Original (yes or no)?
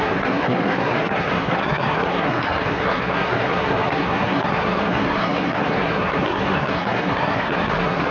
no